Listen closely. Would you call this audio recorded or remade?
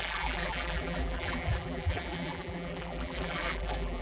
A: remade